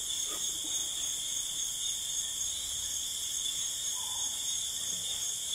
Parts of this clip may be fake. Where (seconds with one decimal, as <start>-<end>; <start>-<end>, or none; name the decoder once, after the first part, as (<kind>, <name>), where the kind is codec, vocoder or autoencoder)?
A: 0.0-0.8 (vocoder, BigVGAN v2); 3.7-5.5